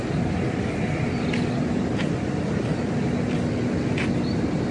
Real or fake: real